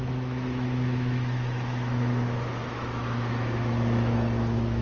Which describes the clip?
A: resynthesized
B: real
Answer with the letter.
A